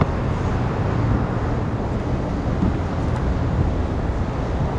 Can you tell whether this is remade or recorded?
recorded